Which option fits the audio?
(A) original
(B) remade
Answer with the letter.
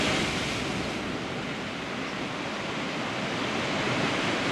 A